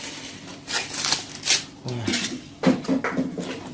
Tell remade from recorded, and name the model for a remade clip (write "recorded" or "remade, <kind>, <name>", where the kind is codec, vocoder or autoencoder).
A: recorded